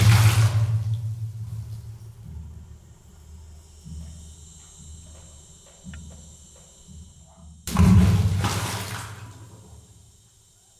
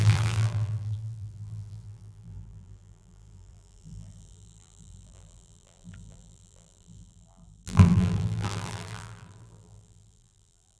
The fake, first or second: second